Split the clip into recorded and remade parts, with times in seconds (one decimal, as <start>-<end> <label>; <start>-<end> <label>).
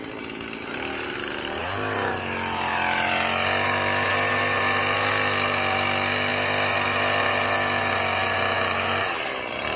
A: 0.0-9.8 recorded